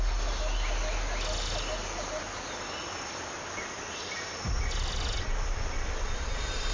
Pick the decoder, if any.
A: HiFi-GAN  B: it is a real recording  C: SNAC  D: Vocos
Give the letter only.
B